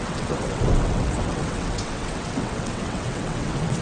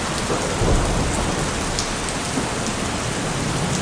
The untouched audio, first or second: second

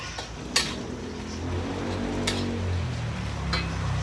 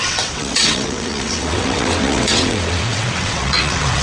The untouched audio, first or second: first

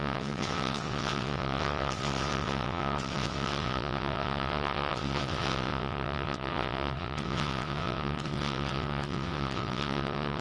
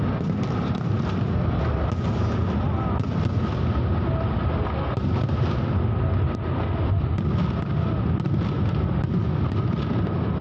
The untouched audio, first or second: second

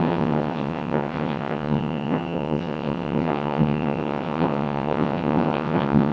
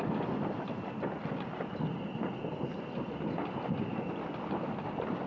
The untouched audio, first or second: second